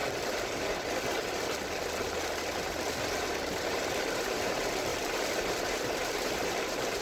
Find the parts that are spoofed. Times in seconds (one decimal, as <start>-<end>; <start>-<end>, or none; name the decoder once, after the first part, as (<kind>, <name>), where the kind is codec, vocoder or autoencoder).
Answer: 3.3-7.0 (vocoder, BigVGAN v2)